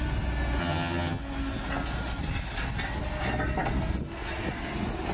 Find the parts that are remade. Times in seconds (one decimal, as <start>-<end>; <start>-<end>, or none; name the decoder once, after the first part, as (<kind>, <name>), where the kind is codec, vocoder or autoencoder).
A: 0.6-1.2 (vocoder, HiFi-GAN)